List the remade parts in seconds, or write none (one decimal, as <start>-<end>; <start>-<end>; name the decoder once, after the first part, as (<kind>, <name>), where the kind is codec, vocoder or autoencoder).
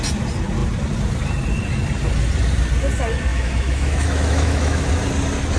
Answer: 3.3-4.9 (autoencoder, DAC-VAE)